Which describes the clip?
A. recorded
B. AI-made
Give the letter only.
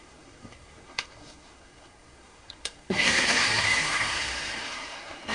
B